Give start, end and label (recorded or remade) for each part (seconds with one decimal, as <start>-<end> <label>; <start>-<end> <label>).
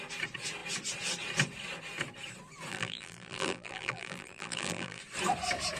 0.0-2.7 recorded; 2.7-5.0 remade; 5.0-5.8 recorded